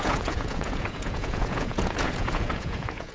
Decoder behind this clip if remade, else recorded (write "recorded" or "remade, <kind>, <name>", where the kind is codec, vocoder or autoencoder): remade, vocoder, Vocos